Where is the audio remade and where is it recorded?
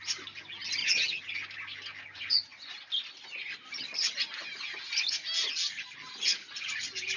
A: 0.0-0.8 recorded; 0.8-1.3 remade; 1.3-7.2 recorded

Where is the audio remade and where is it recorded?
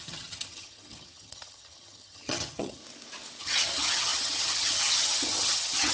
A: 0.0-2.8 remade; 2.8-3.4 recorded; 3.4-5.9 remade